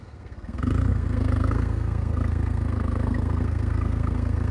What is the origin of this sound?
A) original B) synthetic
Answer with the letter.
B